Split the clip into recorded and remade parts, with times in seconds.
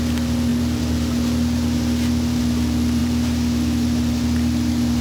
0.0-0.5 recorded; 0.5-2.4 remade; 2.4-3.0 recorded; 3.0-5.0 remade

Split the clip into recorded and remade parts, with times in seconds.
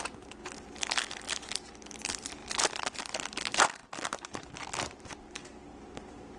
0.0-0.4 remade; 0.4-1.9 recorded; 1.9-2.4 remade; 2.4-3.0 recorded; 3.0-3.8 remade; 3.8-6.4 recorded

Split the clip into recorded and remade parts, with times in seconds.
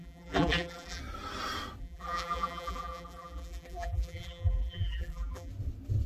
0.0-1.0 remade; 1.0-1.8 recorded; 1.8-5.5 remade; 5.5-6.1 recorded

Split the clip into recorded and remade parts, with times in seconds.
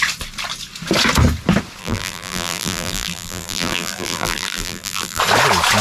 0.0-1.8 recorded; 1.8-5.2 remade; 5.2-5.8 recorded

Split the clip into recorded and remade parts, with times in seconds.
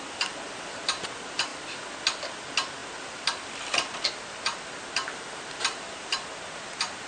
0.0-7.1 recorded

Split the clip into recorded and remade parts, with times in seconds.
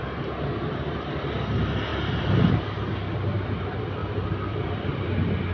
0.0-4.0 recorded; 4.0-5.1 remade; 5.1-5.5 recorded